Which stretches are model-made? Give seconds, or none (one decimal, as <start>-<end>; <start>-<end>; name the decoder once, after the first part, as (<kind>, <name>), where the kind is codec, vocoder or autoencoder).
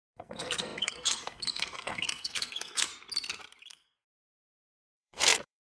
0.0-2.9 (codec, SNAC); 3.7-5.8